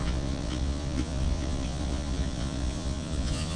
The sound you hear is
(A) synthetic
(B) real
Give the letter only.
A